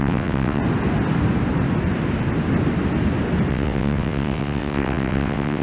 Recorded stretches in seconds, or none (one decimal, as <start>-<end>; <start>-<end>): 0.6-3.5